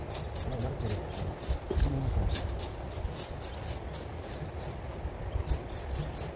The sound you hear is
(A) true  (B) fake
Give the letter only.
A